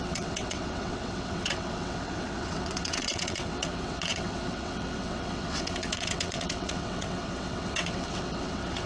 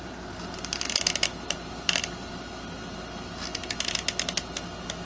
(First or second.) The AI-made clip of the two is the first